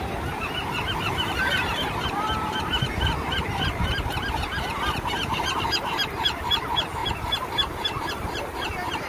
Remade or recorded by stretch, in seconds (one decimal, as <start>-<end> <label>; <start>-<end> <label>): 0.0-9.1 remade